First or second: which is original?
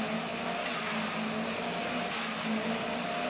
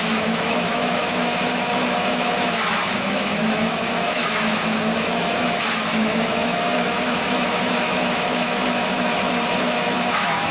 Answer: first